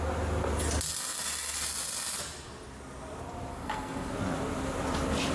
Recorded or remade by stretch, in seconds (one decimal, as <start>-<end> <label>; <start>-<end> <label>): 0.0-3.5 recorded; 3.5-4.1 remade; 4.1-5.3 recorded

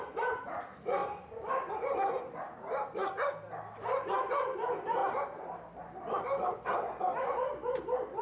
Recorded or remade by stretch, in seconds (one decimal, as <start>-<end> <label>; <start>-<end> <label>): 0.0-8.2 recorded

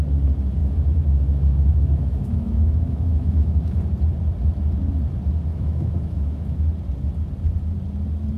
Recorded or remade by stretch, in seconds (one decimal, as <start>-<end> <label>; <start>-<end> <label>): 0.0-0.6 recorded; 0.6-3.8 remade; 3.8-5.5 recorded; 5.5-6.6 remade; 6.6-8.4 recorded